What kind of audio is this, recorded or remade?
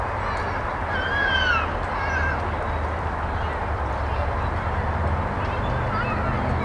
recorded